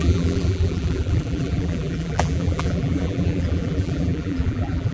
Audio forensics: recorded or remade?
remade